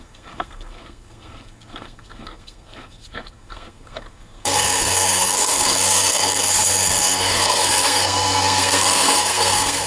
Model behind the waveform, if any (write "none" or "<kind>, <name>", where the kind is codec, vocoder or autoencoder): codec, SNAC